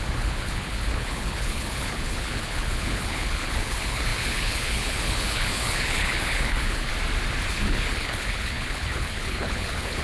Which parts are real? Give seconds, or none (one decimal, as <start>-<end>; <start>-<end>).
6.9-7.5